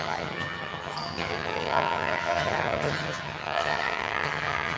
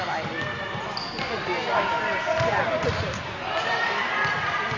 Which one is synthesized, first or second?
first